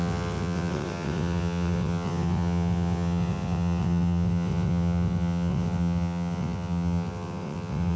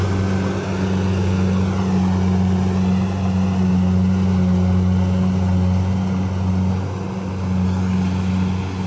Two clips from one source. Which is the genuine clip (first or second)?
second